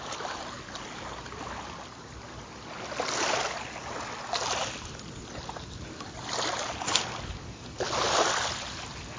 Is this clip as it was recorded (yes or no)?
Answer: yes